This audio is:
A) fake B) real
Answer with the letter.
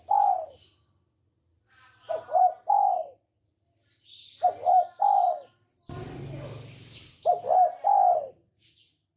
B